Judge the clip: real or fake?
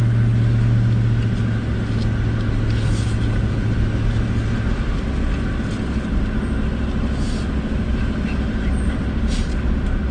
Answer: real